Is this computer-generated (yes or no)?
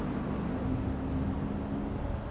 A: no